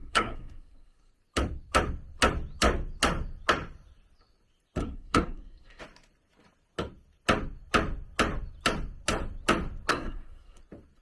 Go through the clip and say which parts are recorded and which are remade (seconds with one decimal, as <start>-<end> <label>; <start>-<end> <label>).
0.0-1.1 remade; 1.1-4.8 recorded; 4.8-5.8 remade; 5.8-9.9 recorded; 9.9-10.6 remade; 10.6-11.0 recorded

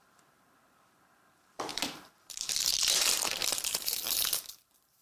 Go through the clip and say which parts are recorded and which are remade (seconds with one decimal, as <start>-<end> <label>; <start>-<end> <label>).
0.0-5.0 remade

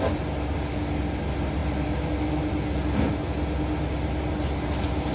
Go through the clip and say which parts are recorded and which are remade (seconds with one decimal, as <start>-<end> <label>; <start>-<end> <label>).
0.0-5.1 recorded